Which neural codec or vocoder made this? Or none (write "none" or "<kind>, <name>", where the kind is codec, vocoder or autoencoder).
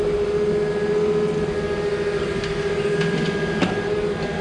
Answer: none